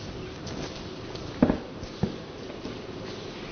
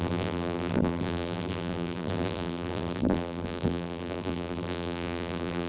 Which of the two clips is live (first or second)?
first